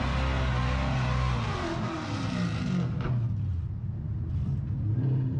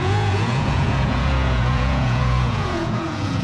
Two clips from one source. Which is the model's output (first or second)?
second